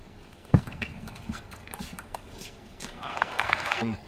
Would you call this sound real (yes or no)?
no